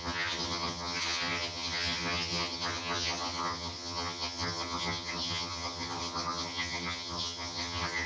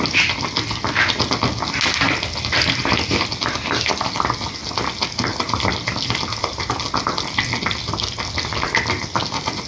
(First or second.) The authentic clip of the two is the second